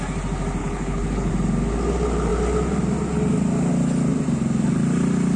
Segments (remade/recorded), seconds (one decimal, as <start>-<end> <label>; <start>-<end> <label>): 0.0-0.6 recorded; 0.6-1.3 remade; 1.3-5.4 recorded